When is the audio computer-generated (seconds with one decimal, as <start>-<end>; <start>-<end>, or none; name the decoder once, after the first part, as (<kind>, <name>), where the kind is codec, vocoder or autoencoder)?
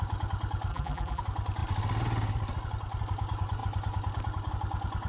0.7-1.2 (vocoder, BigVGAN v2)